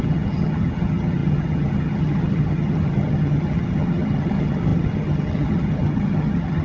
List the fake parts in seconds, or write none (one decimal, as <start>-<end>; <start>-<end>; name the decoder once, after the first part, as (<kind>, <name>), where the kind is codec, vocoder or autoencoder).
0.0-6.6 (vocoder, HiFi-GAN)